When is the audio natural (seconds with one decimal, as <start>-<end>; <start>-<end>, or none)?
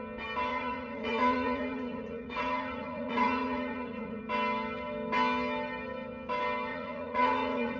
0.0-0.5; 4.2-6.7